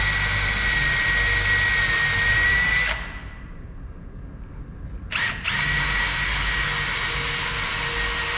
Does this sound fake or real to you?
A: real